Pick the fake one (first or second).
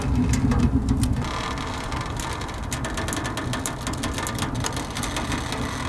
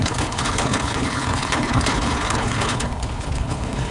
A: second